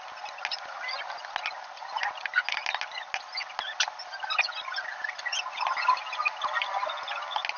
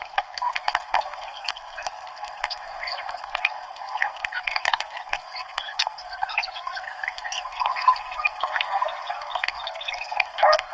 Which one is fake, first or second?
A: second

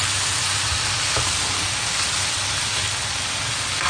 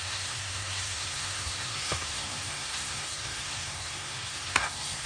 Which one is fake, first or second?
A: second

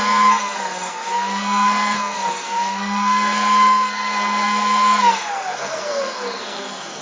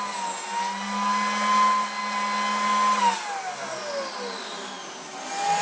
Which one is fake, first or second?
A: first